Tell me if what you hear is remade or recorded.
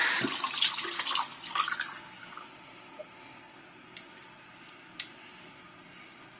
recorded